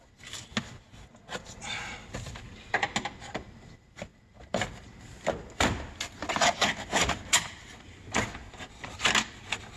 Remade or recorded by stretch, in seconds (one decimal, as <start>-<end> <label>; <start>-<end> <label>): 0.0-9.8 recorded